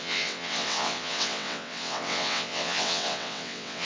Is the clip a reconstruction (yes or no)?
yes